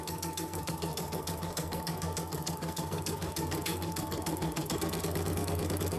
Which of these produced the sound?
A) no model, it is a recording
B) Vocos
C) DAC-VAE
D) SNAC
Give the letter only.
D